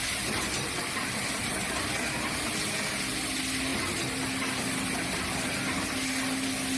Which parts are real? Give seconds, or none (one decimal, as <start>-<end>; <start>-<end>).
0.0-6.8